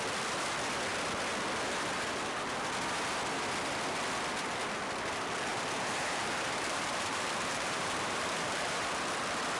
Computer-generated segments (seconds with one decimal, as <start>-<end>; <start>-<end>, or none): 5.5-9.0